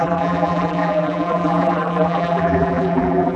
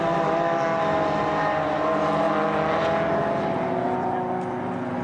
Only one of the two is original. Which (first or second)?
second